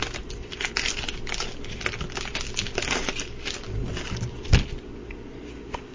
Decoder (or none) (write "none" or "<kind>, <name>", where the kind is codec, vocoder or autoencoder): none